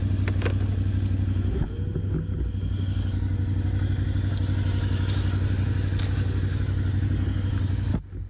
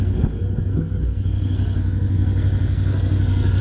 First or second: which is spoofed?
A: second